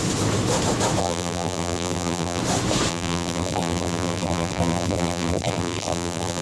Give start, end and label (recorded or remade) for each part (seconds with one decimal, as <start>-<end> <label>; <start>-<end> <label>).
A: 0.0-1.0 recorded; 1.0-2.4 remade; 2.4-2.9 recorded; 2.9-6.4 remade